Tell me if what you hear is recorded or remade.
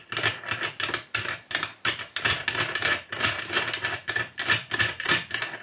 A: recorded